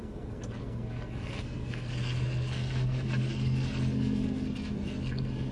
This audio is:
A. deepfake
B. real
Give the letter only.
A